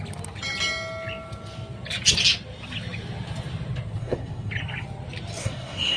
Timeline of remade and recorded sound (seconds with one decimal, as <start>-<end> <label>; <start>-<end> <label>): 0.0-4.0 recorded; 4.0-4.5 remade; 4.5-5.4 recorded; 5.4-6.0 remade